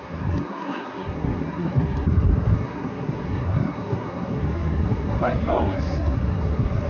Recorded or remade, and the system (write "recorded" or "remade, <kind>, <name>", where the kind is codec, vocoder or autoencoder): remade, codec, SNAC